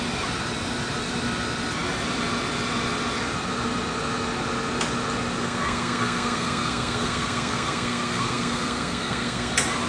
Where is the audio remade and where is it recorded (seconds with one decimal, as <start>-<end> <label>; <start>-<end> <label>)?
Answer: 0.0-5.4 recorded; 5.4-9.5 remade; 9.5-9.9 recorded